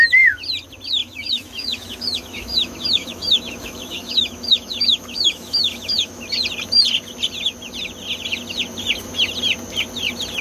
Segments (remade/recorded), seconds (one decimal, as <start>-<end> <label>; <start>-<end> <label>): 0.0-1.0 recorded; 1.0-6.2 remade; 6.2-10.4 recorded